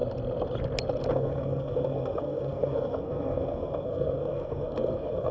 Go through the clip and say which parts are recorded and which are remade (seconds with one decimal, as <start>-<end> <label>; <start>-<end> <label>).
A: 0.0-1.1 recorded; 1.1-5.3 remade